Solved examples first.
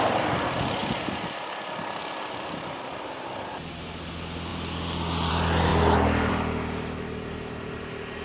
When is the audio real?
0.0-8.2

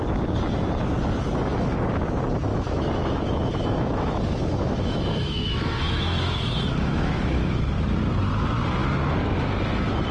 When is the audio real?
0.0-1.3; 1.9-2.5; 7.6-10.1

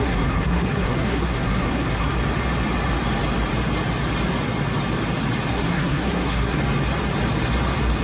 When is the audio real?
2.1-5.5; 6.6-8.0

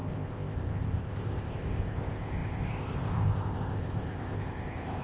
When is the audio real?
none

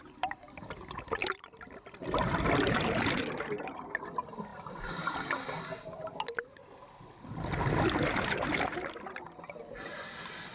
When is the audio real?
0.0-10.5

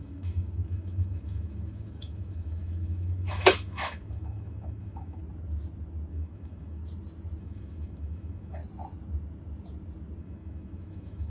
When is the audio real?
5.2-6.1; 6.8-7.4; 8.6-10.2